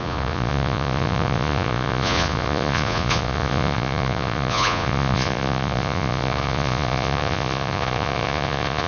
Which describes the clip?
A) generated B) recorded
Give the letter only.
A